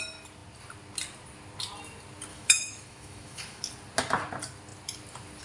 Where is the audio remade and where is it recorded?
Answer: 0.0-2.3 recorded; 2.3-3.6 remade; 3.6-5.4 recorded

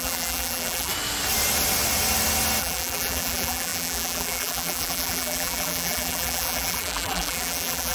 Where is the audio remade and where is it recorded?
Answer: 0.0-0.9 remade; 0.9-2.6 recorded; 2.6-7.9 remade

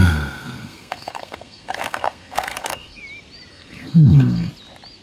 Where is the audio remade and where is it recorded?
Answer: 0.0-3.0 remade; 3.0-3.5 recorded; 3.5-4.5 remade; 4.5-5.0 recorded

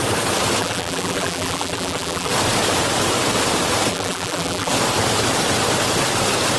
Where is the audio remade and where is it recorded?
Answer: 0.0-0.6 recorded; 0.6-2.3 remade; 2.3-3.9 recorded; 3.9-4.7 remade; 4.7-6.6 recorded

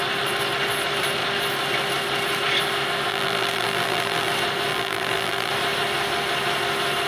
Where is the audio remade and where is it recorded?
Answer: 0.0-3.1 recorded; 3.1-4.3 remade; 4.3-4.7 recorded; 4.7-5.5 remade; 5.5-7.1 recorded